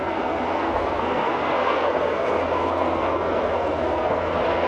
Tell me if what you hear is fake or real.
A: fake